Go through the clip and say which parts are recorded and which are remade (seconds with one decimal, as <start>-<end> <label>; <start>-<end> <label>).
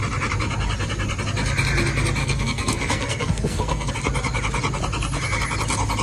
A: 0.0-2.2 recorded; 2.2-3.9 remade; 3.9-6.0 recorded